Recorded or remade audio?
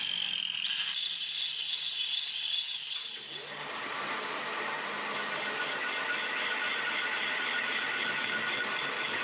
recorded